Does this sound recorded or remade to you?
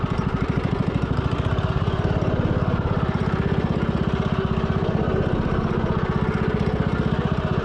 recorded